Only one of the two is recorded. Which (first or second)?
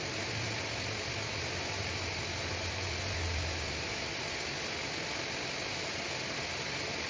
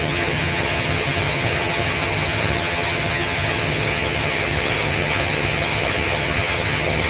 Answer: first